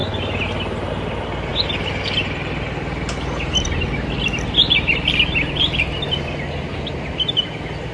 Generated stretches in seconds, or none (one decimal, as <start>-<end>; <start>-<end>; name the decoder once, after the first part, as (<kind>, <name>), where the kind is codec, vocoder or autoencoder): none